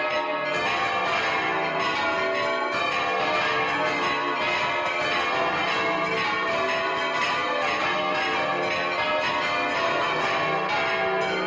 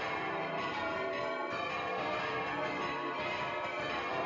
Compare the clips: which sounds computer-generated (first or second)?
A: second